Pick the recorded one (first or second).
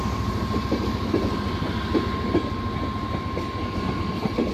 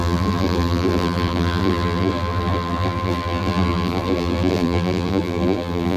first